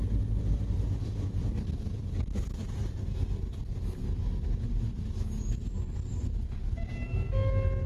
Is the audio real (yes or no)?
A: yes